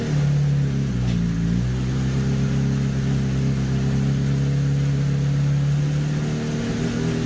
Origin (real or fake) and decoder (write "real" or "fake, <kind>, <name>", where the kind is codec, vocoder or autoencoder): real